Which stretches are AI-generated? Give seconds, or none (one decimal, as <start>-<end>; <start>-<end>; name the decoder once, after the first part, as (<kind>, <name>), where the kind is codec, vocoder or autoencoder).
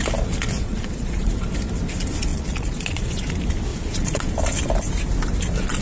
0.6-1.3 (vocoder, Vocos); 2.3-3.3; 3.7-4.3